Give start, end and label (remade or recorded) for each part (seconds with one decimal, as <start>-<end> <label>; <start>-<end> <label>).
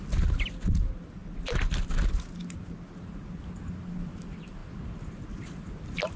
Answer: 0.0-6.2 recorded